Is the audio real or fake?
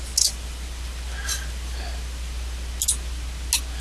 real